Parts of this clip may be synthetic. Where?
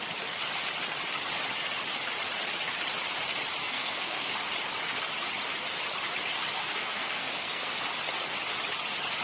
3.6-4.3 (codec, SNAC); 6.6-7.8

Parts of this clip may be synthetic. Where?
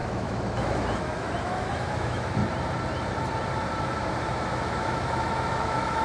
0.0-2.4 (autoencoder, DAC-VAE); 3.8-6.0